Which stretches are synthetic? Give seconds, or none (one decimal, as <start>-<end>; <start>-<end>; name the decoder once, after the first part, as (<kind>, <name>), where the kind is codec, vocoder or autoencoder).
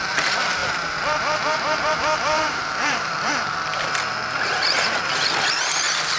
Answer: 0.6-3.3 (vocoder, BigVGAN v2)